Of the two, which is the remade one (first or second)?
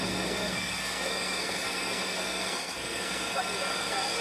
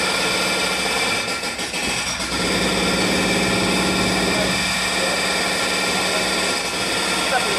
first